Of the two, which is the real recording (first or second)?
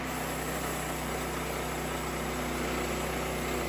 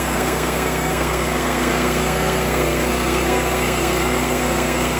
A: first